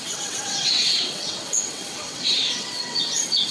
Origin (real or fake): fake